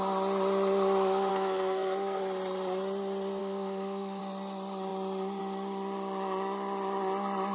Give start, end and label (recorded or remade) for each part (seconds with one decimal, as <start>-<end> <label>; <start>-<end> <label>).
0.0-1.3 recorded; 1.3-2.2 remade; 2.2-3.4 recorded; 3.4-4.2 remade; 4.2-7.5 recorded